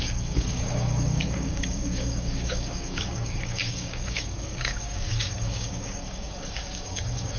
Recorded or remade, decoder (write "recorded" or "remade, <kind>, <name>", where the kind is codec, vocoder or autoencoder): remade, codec, DAC